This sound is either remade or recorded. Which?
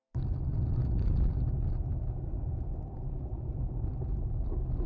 recorded